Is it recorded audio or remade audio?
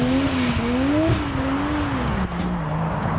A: recorded